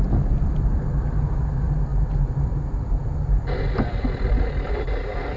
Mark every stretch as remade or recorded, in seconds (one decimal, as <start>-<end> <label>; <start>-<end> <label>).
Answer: 0.0-5.4 remade